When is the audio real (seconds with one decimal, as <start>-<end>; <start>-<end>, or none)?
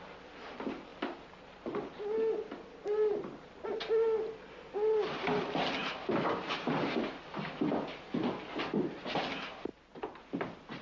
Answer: 0.0-10.8